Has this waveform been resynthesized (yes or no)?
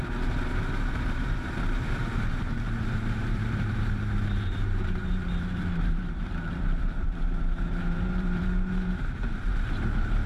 yes